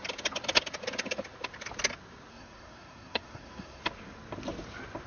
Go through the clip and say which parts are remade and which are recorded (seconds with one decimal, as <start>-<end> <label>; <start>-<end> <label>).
0.0-2.3 recorded; 2.3-3.8 remade; 3.8-5.1 recorded